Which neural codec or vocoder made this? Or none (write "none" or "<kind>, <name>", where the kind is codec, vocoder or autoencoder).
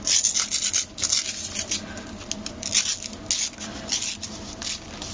none